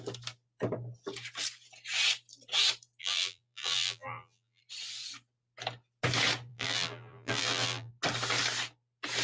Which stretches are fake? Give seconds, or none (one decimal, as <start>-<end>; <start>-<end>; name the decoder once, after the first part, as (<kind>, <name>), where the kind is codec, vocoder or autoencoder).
3.0-4.6 (vocoder, BigVGAN v2); 6.5-7.9